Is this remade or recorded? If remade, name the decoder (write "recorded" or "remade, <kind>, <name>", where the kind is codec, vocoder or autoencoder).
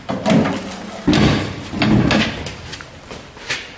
recorded